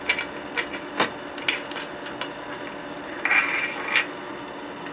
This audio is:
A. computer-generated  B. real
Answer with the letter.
B